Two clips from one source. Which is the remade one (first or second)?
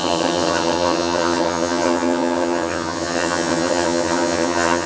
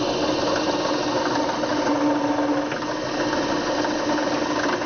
first